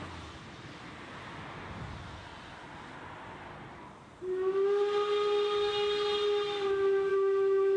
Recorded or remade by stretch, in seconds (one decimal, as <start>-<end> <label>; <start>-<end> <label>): 0.0-7.1 recorded; 7.1-7.8 remade